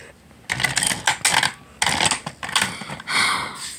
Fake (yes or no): no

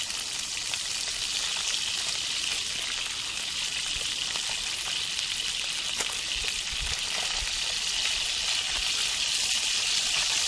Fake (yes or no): no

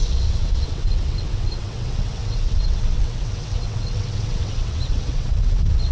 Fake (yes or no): yes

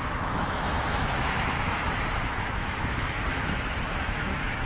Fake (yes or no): yes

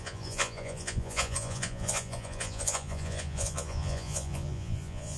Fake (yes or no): yes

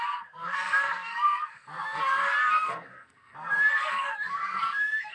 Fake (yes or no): yes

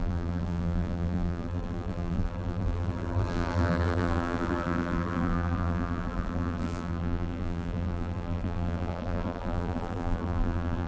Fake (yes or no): yes